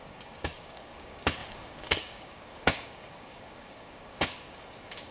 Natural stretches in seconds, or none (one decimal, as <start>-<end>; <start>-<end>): none